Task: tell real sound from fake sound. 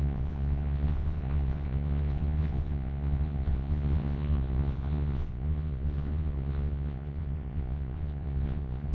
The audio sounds fake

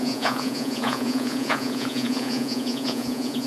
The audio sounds fake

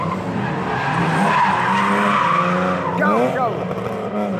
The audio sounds real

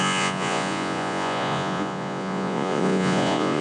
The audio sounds fake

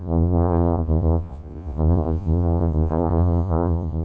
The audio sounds fake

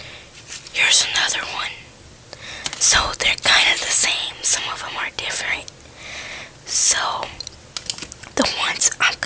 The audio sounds real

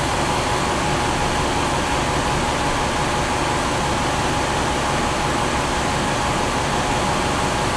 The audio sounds real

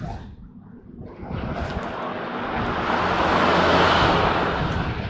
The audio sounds real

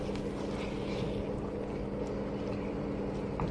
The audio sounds real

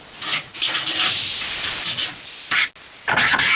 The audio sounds real